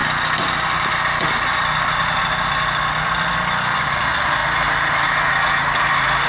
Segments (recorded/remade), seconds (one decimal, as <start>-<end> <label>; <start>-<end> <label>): 0.0-6.3 recorded